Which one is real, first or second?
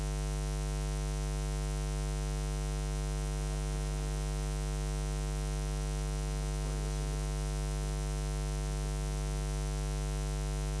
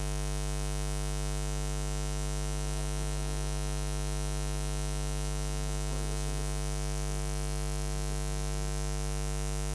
first